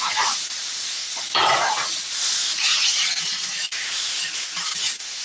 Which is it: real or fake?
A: fake